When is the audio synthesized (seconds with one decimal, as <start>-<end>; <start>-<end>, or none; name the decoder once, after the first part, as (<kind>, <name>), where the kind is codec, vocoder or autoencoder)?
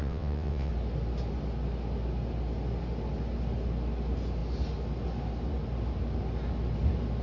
0.0-0.7 (vocoder, WaveNeXt)